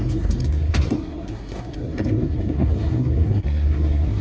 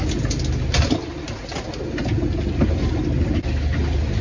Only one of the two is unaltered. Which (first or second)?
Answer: second